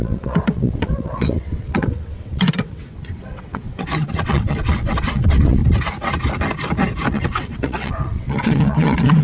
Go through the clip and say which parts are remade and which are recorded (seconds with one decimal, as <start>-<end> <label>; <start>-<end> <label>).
0.0-5.6 remade; 5.6-7.1 recorded; 7.1-9.2 remade